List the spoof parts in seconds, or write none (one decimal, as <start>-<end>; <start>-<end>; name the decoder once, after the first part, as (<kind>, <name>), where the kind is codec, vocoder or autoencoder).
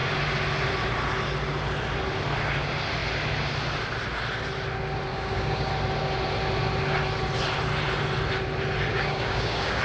5.1-5.7 (codec, DAC); 8.9-9.8